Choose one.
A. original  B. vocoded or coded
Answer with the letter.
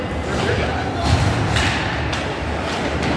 A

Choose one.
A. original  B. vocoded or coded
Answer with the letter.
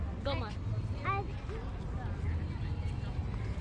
A